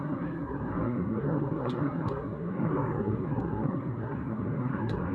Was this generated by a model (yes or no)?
yes